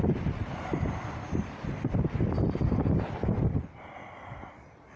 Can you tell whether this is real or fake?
real